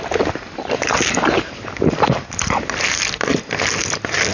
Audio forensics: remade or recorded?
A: recorded